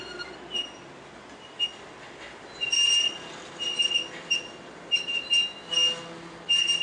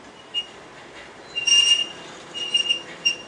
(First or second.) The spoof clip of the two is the second